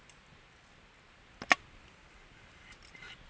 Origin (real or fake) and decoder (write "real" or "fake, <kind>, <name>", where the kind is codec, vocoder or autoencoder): real